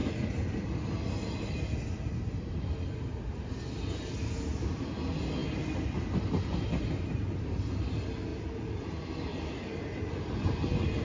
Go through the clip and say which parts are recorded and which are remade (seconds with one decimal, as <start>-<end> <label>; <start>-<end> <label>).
0.0-9.3 recorded; 9.3-11.0 remade